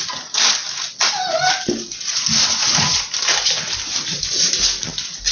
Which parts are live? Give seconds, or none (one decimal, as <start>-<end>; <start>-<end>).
0.0-5.3